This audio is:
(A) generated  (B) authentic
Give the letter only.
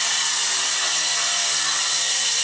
B